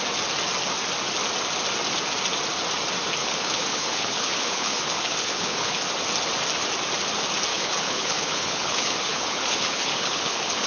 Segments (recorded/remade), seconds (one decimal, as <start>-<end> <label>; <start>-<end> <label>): 0.0-3.2 recorded; 3.2-5.8 remade; 5.8-7.5 recorded; 7.5-10.7 remade